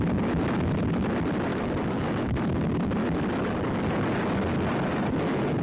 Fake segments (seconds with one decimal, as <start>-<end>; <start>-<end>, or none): 1.5-2.6; 4.9-5.6